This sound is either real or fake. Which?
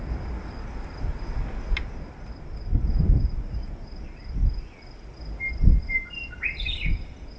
real